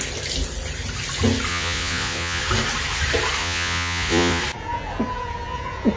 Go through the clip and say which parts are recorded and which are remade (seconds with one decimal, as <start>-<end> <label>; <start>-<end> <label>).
0.0-1.5 recorded; 1.5-2.4 remade; 2.4-3.4 recorded; 3.4-4.4 remade; 4.4-6.0 recorded